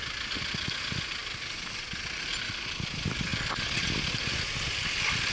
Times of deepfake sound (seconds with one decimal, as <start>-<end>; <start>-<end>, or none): none